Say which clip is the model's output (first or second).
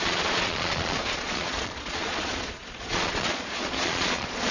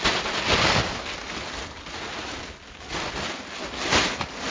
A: first